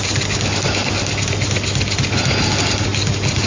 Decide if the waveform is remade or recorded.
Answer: recorded